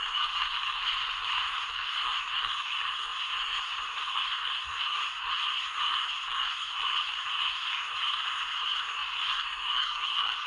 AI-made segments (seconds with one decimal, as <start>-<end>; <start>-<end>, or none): 0.0-10.5